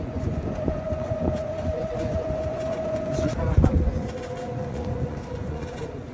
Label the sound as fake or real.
fake